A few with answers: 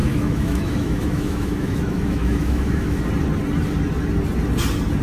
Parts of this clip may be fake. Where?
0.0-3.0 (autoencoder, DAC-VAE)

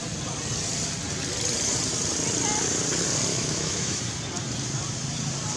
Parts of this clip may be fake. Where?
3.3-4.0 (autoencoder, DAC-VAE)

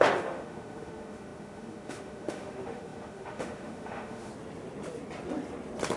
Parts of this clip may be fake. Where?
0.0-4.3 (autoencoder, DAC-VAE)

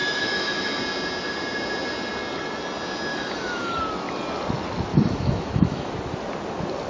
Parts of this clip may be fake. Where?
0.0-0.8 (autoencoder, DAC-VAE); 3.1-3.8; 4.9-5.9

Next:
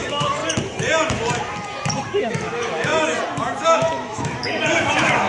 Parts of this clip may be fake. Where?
0.0-0.4 (autoencoder, DAC-VAE); 2.2-2.9; 3.9-5.3

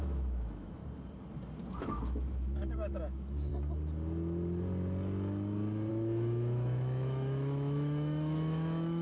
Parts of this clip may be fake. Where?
0.0-0.8 (autoencoder, DAC-VAE); 1.8-3.5; 5.9-9.0